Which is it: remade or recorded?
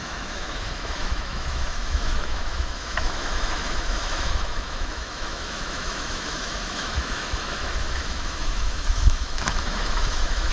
remade